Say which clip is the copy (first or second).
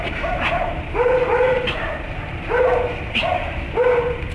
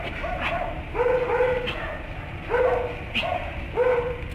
first